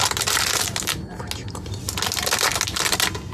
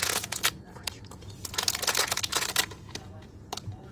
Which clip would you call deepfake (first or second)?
second